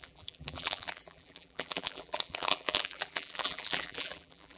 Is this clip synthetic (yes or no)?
yes